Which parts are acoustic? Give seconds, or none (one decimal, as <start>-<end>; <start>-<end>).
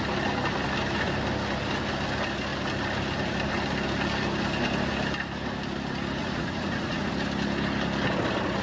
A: 0.0-6.2; 7.1-8.6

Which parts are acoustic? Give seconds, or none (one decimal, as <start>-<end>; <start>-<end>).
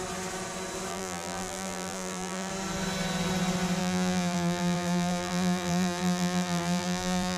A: 0.0-0.9; 2.5-3.8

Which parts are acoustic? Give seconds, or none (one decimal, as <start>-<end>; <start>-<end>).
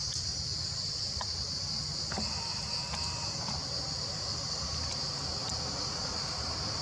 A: 0.0-6.8